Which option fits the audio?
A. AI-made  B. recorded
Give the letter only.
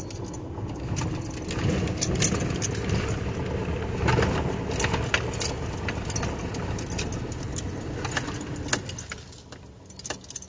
B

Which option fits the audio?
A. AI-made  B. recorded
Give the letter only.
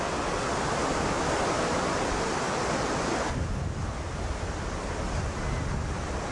B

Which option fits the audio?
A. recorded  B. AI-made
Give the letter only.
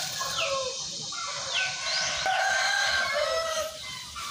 A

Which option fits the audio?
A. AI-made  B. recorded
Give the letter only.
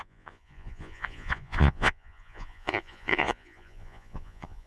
A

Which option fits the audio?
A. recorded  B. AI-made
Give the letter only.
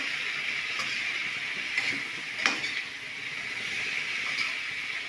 A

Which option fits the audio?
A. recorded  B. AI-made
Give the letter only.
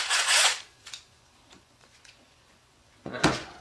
B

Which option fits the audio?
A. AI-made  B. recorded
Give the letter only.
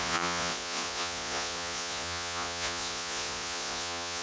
A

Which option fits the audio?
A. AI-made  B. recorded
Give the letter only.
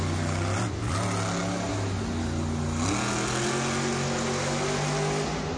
B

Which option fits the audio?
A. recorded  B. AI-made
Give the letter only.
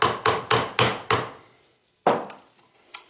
A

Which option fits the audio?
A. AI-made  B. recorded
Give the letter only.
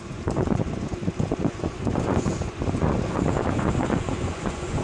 A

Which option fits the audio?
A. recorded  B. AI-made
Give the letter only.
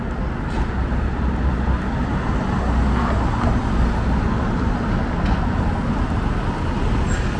A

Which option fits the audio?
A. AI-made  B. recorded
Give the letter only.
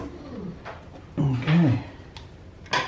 B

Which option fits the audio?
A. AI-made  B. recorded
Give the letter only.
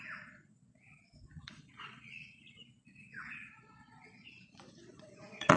A